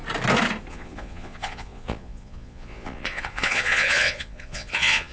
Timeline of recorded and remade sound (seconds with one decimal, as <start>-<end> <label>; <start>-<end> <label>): 0.0-0.7 recorded; 0.7-5.1 remade